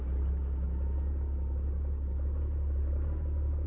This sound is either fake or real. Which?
real